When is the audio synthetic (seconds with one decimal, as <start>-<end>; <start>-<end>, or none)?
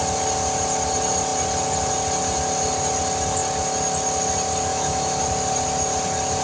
4.7-5.2